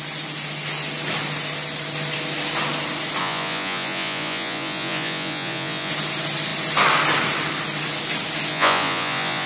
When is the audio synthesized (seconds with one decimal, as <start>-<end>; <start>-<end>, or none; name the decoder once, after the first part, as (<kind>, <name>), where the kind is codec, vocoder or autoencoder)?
3.2-5.9 (vocoder, Vocos); 8.5-9.5